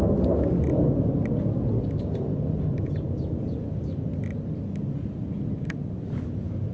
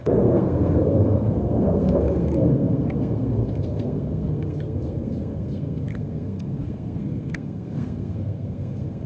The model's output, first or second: second